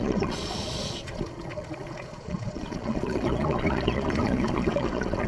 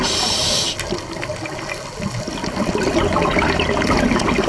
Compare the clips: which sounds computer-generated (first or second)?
first